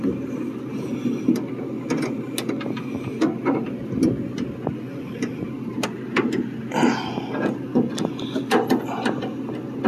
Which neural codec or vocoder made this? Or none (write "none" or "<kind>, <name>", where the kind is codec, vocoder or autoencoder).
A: none